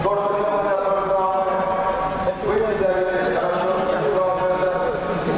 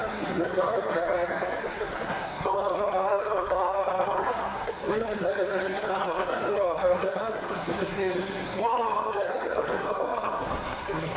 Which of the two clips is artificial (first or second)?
second